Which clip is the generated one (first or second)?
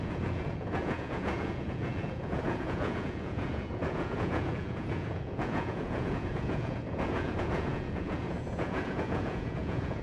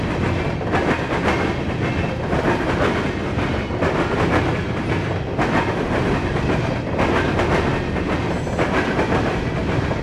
first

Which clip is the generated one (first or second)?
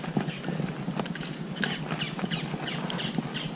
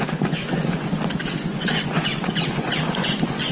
second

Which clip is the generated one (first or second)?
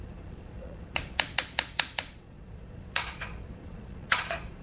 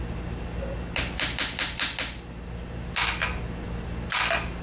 first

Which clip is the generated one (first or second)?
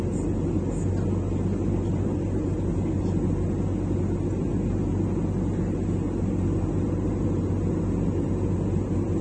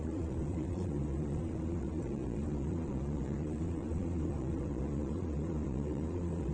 second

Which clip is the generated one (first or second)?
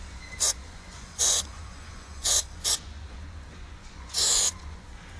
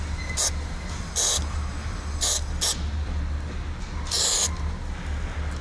first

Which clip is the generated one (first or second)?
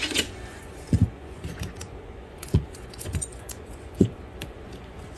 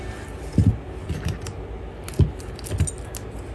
first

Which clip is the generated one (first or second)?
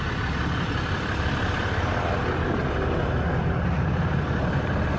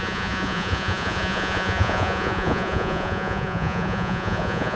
second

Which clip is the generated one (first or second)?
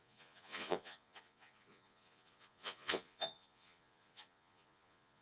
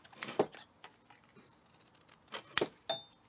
first